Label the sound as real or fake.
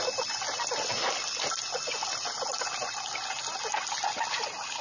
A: real